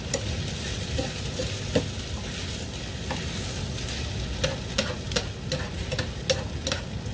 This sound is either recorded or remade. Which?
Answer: recorded